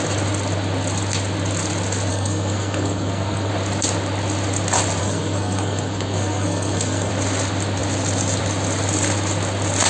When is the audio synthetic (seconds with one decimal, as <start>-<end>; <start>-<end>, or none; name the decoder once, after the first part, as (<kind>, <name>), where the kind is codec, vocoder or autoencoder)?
2.1-3.5 (codec, SNAC); 5.0-7.1